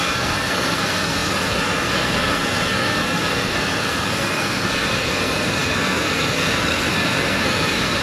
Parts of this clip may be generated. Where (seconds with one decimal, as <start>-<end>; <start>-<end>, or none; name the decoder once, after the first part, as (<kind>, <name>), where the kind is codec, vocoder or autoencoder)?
0.0-8.0 (codec, SNAC)